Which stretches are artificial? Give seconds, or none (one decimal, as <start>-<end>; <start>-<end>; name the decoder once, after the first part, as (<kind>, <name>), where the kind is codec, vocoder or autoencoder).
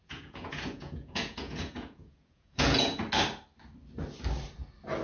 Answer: 0.0-3.0 (vocoder, Vocos)